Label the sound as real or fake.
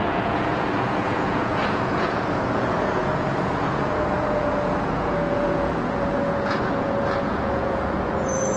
fake